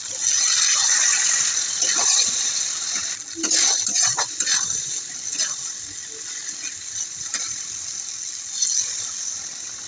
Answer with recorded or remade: recorded